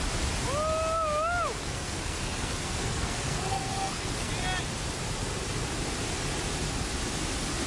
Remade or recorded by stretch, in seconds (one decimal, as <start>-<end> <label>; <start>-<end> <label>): 0.0-1.6 recorded; 1.6-4.3 remade; 4.3-7.7 recorded